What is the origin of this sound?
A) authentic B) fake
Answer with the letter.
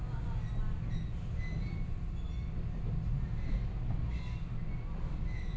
A